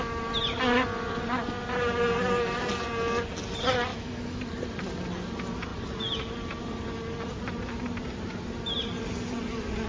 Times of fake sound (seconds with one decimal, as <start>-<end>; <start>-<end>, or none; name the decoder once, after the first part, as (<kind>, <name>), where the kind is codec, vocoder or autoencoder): 3.9-4.4 (autoencoder, DAC-VAE)